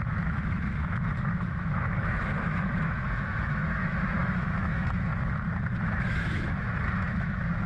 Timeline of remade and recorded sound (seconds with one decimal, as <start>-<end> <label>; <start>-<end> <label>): 0.0-5.1 remade; 5.1-5.8 recorded; 5.8-7.7 remade